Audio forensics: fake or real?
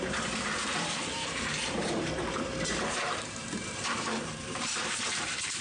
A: fake